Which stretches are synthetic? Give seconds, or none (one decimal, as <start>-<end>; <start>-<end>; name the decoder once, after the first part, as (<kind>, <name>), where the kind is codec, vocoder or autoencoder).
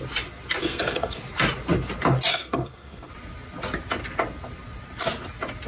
0.6-1.2 (codec, SNAC); 2.3-3.1